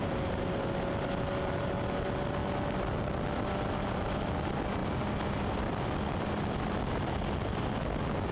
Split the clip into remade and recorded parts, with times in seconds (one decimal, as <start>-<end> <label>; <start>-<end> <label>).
0.0-8.3 recorded